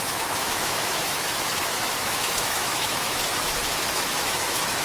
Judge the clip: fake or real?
fake